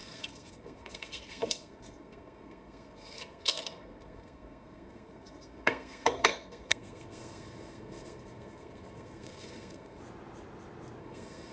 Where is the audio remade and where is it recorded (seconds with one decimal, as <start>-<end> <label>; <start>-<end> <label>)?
0.0-10.0 remade; 10.0-11.0 recorded; 11.0-11.5 remade